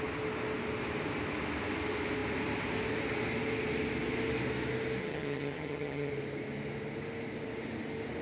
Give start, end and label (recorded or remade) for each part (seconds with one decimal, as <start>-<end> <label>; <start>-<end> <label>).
0.0-5.0 recorded; 5.0-6.1 remade; 6.1-8.2 recorded